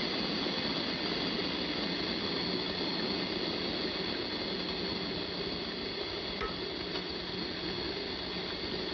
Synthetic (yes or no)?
no